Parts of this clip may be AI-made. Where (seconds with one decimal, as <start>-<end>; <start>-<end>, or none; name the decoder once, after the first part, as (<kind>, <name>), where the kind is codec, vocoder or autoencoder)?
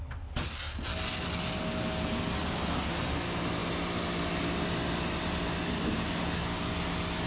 none